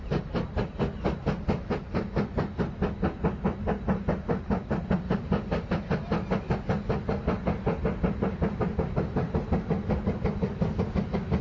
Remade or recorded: recorded